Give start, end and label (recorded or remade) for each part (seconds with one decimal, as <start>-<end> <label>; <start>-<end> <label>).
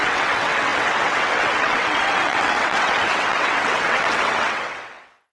0.0-5.3 remade